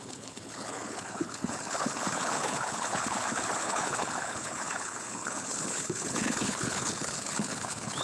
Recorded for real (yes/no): no